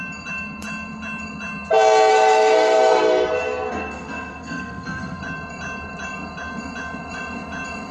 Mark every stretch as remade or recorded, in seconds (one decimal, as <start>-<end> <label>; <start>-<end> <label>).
0.0-2.1 recorded; 2.1-5.2 remade; 5.2-7.9 recorded